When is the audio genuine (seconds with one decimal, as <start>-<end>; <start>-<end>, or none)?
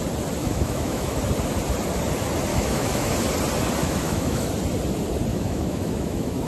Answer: 0.0-0.4; 1.2-2.5; 3.1-3.8; 4.5-5.3